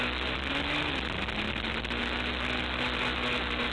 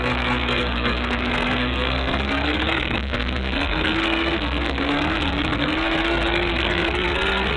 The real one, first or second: first